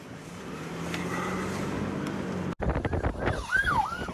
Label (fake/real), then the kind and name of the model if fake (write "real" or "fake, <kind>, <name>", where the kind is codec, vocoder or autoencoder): real